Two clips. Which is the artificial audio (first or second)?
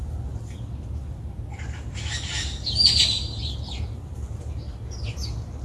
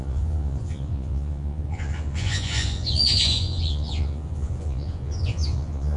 second